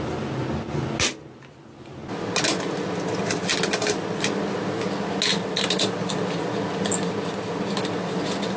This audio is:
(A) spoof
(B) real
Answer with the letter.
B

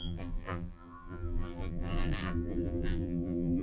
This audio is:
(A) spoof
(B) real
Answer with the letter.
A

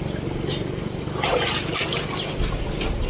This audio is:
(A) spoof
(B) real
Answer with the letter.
B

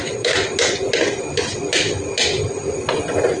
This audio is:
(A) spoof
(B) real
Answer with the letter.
B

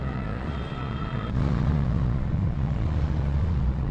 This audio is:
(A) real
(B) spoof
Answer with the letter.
B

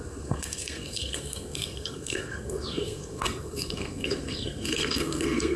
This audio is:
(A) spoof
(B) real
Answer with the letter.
A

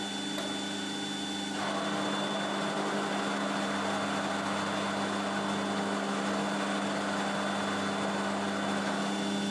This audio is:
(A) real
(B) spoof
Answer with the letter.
A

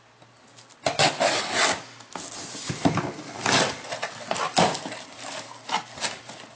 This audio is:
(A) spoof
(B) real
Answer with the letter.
B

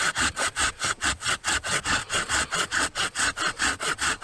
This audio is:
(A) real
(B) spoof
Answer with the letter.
B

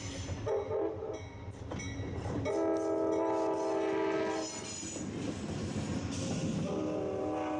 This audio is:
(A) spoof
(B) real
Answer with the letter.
B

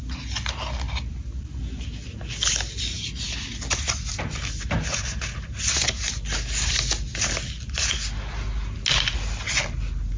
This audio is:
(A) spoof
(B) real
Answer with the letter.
B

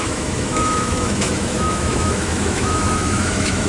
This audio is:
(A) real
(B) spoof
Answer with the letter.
B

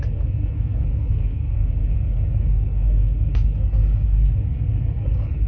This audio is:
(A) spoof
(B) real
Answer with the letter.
A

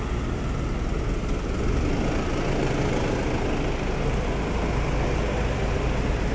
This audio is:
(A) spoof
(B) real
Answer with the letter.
B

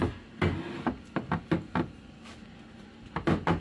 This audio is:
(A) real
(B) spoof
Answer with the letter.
A